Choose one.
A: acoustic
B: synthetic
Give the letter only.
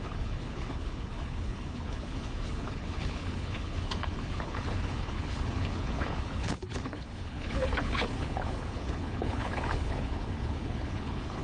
B